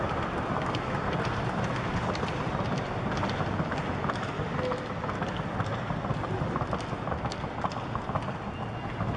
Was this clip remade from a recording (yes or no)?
no